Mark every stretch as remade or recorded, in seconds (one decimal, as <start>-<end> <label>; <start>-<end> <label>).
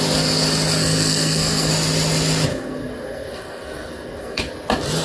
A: 0.0-0.8 recorded; 0.8-1.7 remade; 1.7-2.5 recorded; 2.5-4.4 remade; 4.4-5.0 recorded